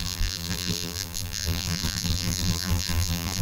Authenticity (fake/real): fake